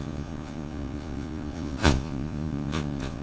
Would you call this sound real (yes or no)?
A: no